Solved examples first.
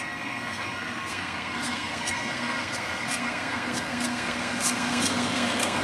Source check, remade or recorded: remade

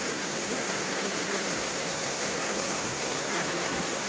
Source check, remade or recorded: remade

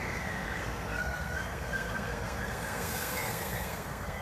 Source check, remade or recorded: remade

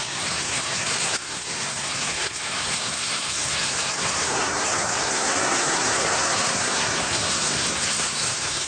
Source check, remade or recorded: remade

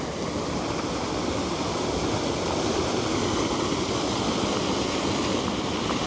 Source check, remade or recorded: recorded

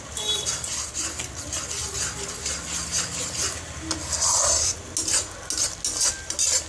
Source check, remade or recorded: recorded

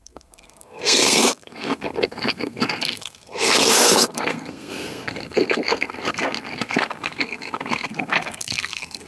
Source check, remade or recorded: remade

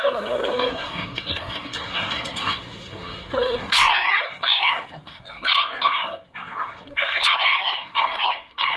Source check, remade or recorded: remade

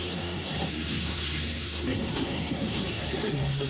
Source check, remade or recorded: remade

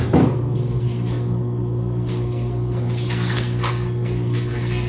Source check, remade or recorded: remade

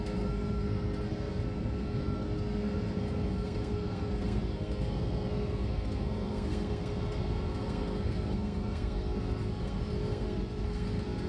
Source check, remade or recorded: remade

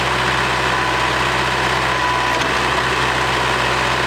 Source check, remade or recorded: recorded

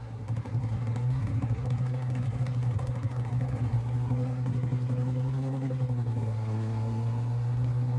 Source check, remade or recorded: remade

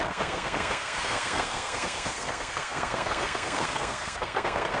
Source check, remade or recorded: remade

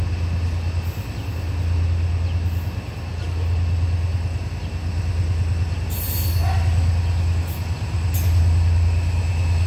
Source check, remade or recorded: recorded